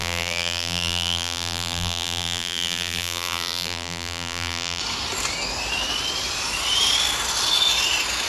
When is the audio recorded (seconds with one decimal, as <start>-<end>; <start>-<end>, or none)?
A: 4.8-8.3